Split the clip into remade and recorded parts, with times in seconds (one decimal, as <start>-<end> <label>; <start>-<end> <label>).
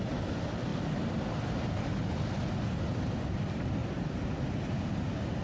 0.0-5.4 recorded